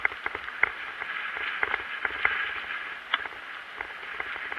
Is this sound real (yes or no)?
yes